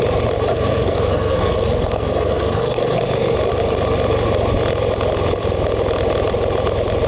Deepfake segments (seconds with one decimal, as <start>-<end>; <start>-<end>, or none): 0.5-3.0